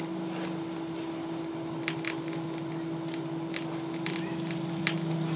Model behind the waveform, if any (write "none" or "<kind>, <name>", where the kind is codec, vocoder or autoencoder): none